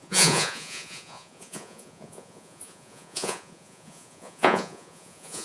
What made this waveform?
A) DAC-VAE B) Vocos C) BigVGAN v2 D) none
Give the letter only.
B